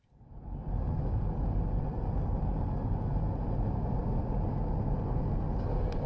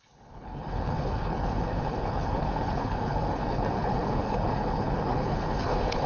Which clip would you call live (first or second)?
first